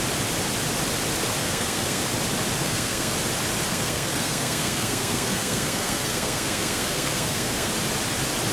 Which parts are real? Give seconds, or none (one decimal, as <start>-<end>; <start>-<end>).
0.0-1.4; 2.0-2.6; 3.1-3.7; 7.7-8.5